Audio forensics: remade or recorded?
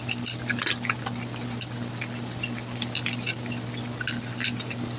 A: remade